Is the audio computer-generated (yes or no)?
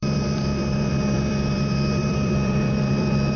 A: yes